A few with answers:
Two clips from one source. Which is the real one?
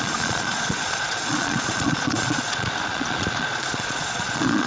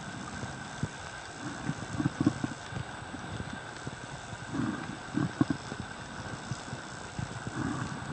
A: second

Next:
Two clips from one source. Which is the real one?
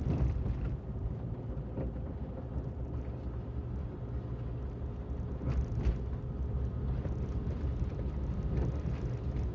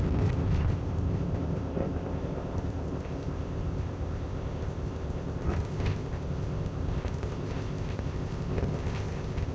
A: first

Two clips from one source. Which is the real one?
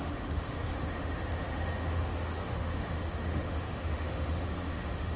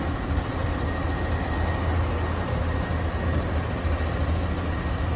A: second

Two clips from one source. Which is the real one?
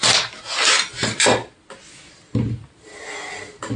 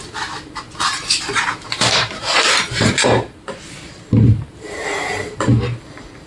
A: first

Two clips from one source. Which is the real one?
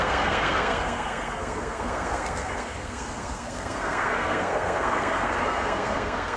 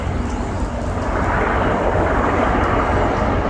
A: second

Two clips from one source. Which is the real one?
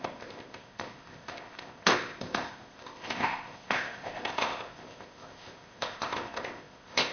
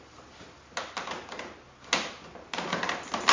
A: second